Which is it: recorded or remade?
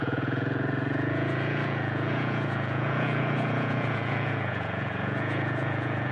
remade